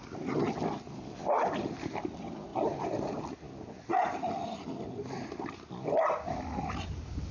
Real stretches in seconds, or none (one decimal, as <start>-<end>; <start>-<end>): 0.0-2.5; 3.3-7.3